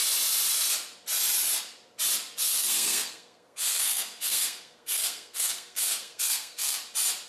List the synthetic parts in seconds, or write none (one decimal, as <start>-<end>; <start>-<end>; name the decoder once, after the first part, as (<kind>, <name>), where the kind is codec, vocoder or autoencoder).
2.4-6.8 (codec, SNAC)